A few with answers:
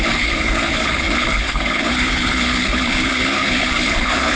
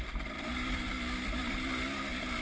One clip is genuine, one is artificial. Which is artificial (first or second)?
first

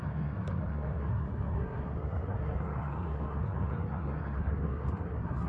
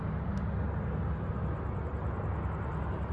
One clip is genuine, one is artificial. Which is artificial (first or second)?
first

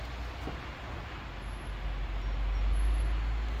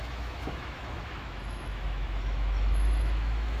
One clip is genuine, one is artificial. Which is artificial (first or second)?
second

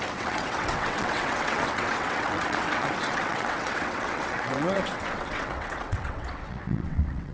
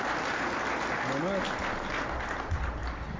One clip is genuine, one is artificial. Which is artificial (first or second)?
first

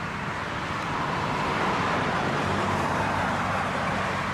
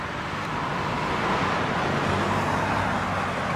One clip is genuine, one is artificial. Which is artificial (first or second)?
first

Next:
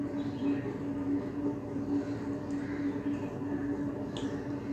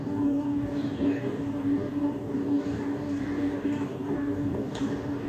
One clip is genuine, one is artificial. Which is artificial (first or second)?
second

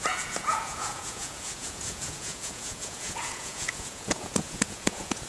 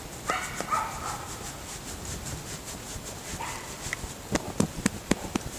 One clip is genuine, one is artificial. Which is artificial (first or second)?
first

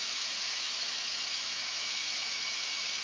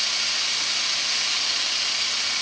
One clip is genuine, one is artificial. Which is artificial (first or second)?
first